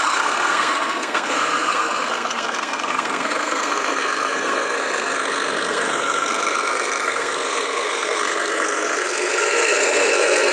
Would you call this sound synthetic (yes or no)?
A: yes